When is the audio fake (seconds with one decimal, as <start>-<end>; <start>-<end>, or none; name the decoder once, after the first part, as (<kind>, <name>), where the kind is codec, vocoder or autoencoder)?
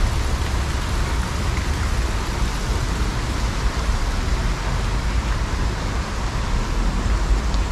none